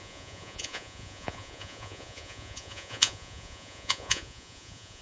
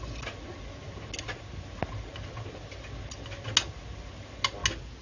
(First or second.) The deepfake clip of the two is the first